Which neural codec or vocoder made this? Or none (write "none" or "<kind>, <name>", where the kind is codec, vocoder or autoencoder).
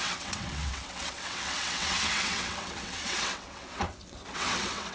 vocoder, WaveNeXt